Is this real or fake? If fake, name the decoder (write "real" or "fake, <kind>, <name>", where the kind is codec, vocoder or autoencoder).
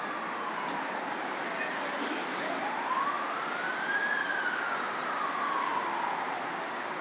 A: real